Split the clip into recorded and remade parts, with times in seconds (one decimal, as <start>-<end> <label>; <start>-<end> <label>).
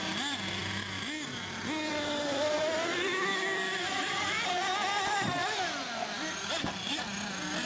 0.0-1.9 recorded; 1.9-2.6 remade; 2.6-7.7 recorded